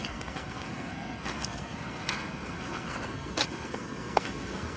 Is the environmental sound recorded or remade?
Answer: remade